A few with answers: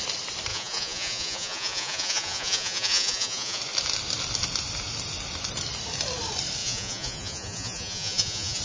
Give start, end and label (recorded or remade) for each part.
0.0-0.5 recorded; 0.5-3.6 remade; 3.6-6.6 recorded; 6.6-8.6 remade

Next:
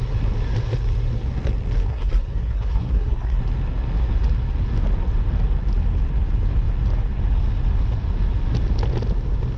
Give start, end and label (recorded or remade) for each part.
0.0-1.8 recorded; 1.8-3.4 remade; 3.4-9.6 recorded

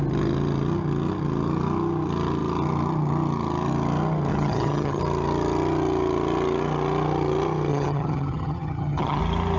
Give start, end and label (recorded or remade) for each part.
0.0-4.3 recorded; 4.3-5.0 remade; 5.0-7.7 recorded; 7.7-9.2 remade; 9.2-9.6 recorded

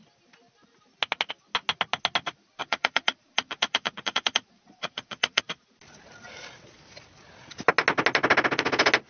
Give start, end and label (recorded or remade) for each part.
0.0-2.6 recorded; 2.6-5.4 remade; 5.4-9.1 recorded

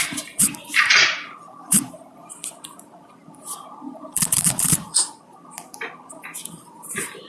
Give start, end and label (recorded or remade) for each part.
0.0-7.3 remade